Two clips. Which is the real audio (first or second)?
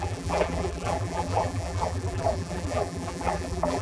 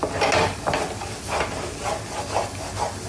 second